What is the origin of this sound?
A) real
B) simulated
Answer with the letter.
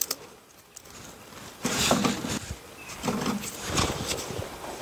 A